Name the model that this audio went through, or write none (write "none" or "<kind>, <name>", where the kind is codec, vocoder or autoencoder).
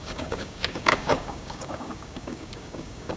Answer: codec, DAC